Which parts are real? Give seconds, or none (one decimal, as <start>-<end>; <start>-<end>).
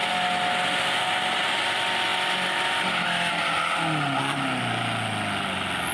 0.0-5.9